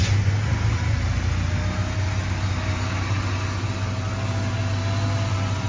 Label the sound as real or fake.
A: real